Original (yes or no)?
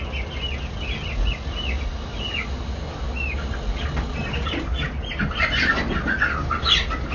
yes